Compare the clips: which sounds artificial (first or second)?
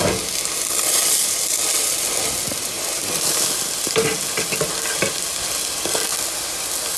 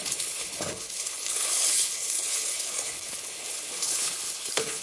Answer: second